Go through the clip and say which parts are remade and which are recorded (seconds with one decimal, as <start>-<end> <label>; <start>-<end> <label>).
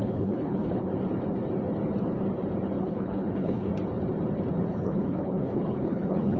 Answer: 0.0-0.9 remade; 0.9-2.8 recorded; 2.8-3.7 remade; 3.7-4.7 recorded; 4.7-6.4 remade